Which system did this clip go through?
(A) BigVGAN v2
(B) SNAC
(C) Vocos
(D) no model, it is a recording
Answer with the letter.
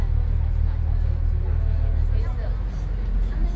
D